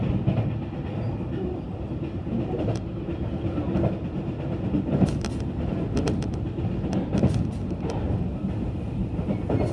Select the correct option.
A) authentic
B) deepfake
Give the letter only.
A